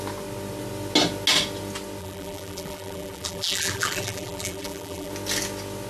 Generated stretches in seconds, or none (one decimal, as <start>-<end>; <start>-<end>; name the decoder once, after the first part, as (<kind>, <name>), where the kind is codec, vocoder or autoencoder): 2.0-5.1 (vocoder, BigVGAN v2)